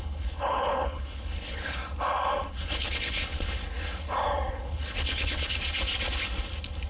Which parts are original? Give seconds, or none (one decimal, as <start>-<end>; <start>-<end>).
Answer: 1.8-2.5; 3.6-4.5; 5.6-6.9